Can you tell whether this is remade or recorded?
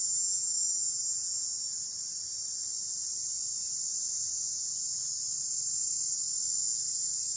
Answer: recorded